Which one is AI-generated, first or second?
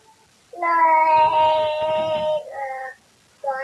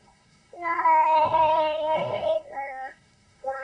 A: second